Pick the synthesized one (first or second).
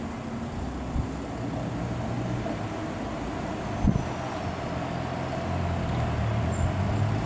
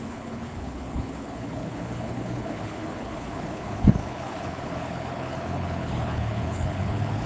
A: second